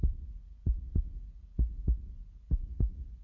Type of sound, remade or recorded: remade